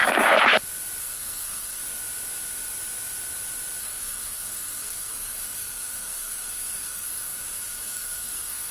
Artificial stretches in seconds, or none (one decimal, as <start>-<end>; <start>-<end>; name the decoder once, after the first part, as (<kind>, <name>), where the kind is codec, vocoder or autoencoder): 1.0-1.8 (codec, SNAC); 3.8-8.7